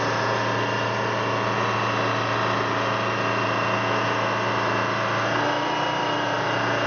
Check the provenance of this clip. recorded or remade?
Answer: recorded